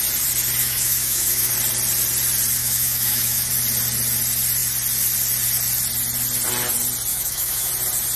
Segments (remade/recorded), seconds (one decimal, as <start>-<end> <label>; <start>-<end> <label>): 0.0-0.6 recorded; 0.6-1.5 remade; 1.5-2.6 recorded; 2.6-3.5 remade; 3.5-7.1 recorded; 7.1-7.7 remade; 7.7-8.2 recorded